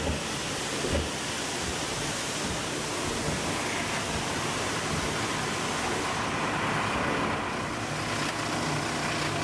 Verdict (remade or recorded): recorded